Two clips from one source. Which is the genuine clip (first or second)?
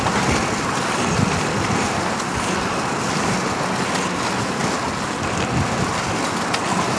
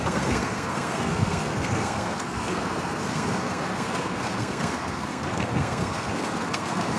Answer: first